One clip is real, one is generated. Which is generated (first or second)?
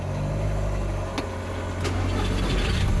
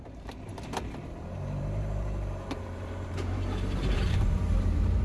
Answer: second